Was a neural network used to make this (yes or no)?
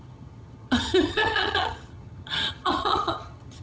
yes